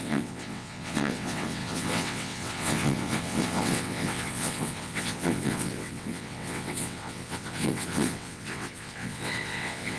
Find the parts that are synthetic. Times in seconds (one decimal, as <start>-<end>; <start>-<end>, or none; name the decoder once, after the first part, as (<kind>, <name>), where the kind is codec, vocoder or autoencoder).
0.0-10.0 (vocoder, WaveNeXt)